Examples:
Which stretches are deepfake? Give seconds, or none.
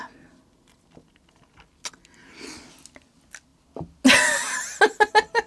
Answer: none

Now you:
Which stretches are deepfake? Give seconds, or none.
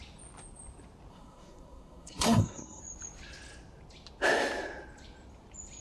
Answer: 1.1-2.8 (codec, SNAC)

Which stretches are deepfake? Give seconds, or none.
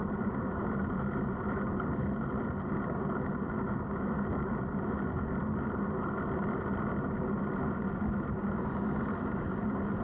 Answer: none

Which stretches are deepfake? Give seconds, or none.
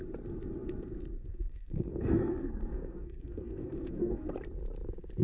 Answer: 1.2-4.3 (codec, SNAC)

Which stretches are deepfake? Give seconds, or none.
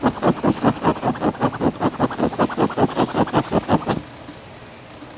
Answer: none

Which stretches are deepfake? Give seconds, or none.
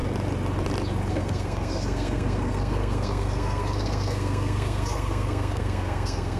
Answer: 1.1-6.4 (codec, SNAC)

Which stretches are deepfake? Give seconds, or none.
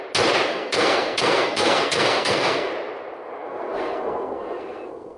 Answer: 0.5-2.7 (codec, SNAC); 3.4-5.2